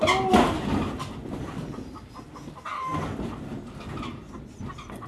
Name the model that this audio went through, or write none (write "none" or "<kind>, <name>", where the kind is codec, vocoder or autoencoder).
none